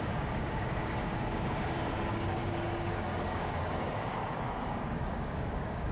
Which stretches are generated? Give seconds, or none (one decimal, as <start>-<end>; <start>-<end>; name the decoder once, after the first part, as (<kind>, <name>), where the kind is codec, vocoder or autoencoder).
0.0-5.9 (codec, DAC)